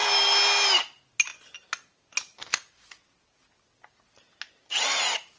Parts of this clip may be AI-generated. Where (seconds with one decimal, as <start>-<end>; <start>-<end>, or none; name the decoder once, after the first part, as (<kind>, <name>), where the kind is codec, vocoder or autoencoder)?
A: none